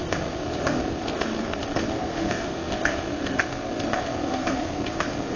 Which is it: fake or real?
fake